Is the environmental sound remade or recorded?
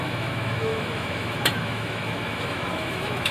remade